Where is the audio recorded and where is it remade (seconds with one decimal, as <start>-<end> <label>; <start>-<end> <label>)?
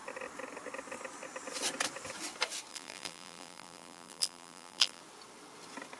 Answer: 0.0-2.7 recorded; 2.7-5.0 remade; 5.0-6.0 recorded